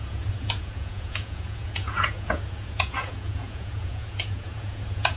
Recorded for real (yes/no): no